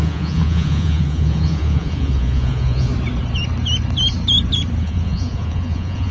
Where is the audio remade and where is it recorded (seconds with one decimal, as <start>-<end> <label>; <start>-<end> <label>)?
0.0-2.9 remade; 2.9-4.8 recorded; 4.8-6.1 remade